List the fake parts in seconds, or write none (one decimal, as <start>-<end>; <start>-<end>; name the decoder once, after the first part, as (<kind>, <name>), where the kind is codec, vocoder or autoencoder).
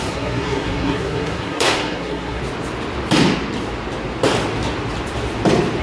0.0-2.4 (codec, SNAC)